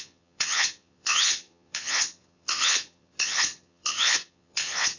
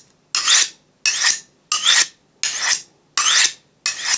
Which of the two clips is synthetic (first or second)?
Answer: first